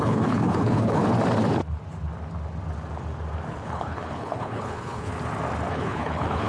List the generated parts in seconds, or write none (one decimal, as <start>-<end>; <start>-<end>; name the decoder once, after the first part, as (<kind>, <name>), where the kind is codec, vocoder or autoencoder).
0.0-1.0 (codec, HILCodec); 3.5-5.1; 5.7-6.5